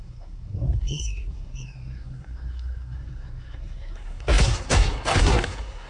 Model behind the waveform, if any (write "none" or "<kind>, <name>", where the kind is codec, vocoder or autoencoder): codec, SNAC